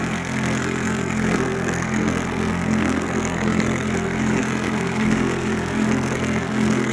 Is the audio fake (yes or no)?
yes